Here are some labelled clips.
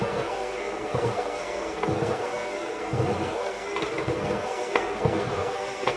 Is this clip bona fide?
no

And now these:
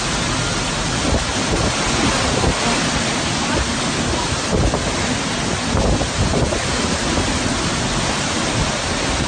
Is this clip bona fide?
yes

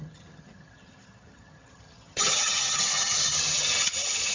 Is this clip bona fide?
no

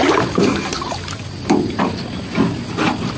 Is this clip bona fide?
yes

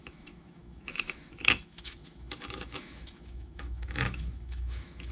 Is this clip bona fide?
no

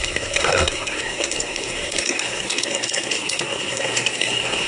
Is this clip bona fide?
no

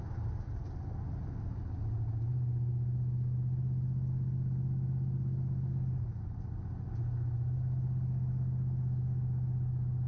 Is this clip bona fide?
yes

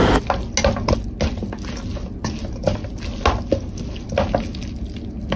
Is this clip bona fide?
yes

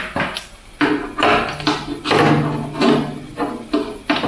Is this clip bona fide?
yes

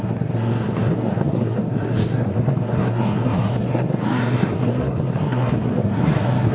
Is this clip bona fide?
no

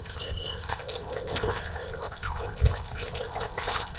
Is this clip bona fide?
no